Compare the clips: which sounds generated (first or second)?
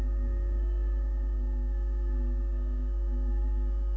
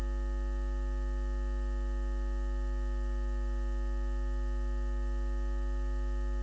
first